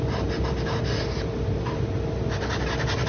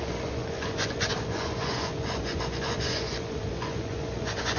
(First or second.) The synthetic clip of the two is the second